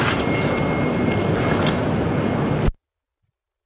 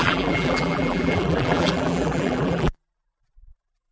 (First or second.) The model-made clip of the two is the second